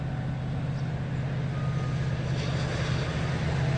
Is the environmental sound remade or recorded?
recorded